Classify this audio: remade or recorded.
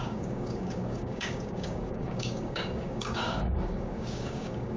remade